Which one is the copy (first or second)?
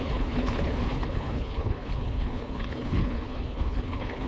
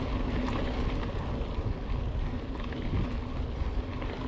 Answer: first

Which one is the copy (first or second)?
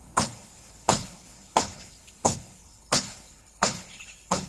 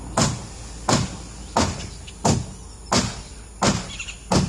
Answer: first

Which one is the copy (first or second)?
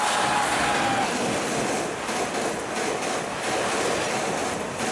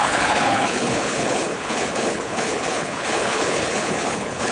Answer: second